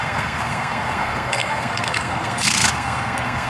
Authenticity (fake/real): fake